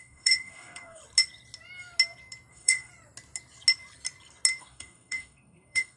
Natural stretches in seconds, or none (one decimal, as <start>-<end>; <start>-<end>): 1.0-2.5; 2.9-4.6

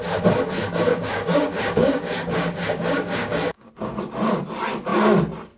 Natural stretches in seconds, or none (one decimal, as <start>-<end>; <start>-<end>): 0.0-0.9; 3.7-5.6

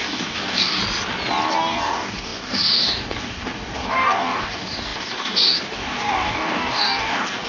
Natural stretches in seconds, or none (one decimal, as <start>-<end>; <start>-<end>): 0.8-1.5

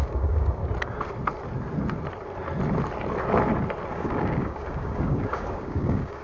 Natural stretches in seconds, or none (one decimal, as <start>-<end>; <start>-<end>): 0.6-3.9

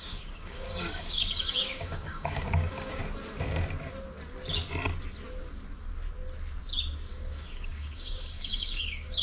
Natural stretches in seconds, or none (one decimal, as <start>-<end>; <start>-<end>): 3.0-7.1

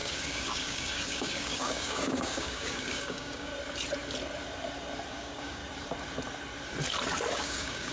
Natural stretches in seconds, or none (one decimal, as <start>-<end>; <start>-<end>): 3.5-5.1; 5.6-7.3

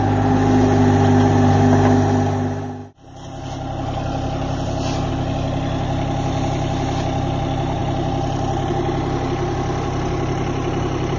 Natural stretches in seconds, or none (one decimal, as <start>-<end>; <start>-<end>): 0.0-11.2

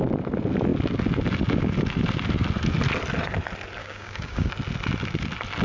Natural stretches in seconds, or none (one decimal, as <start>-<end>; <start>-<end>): 0.0-3.8; 4.5-5.6